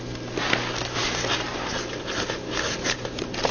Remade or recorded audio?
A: recorded